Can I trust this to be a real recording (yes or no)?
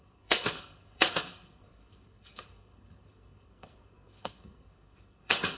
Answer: no